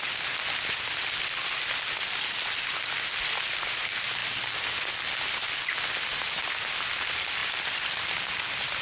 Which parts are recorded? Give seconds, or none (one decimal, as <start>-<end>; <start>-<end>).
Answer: 0.0-8.8